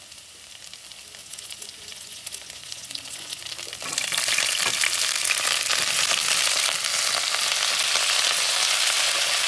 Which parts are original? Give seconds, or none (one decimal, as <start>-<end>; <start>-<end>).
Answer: 0.0-1.2; 3.4-9.5